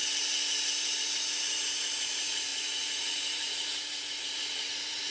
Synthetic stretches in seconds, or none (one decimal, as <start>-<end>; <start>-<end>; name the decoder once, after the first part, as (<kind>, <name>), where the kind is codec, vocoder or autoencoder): 1.0-5.1 (vocoder, Vocos)